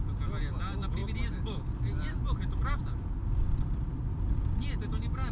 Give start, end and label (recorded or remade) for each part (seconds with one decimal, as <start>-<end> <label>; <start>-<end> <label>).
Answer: 0.0-5.3 recorded